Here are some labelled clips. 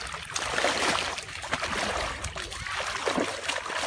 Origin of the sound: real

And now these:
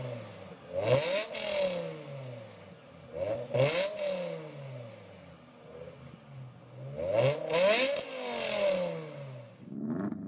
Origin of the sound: real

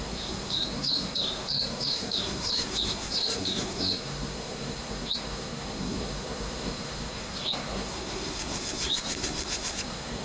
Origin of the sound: fake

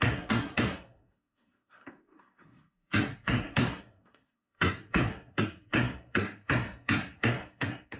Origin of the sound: fake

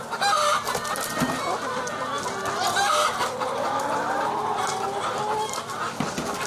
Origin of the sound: real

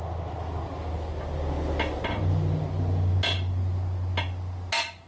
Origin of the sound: real